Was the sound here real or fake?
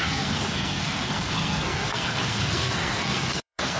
fake